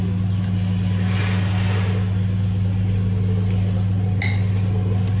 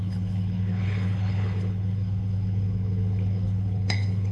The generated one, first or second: second